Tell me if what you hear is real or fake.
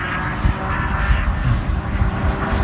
real